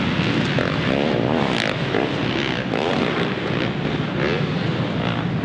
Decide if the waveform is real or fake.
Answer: real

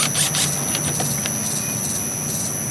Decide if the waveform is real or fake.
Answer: real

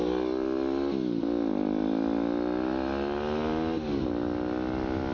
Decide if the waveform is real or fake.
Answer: real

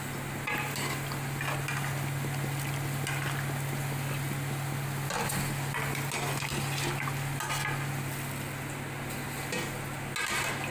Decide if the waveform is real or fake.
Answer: real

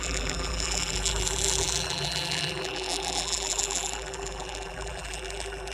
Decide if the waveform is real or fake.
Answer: fake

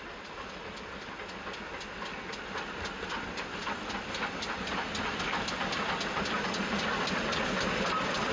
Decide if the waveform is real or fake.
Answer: real